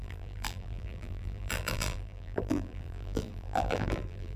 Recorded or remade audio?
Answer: remade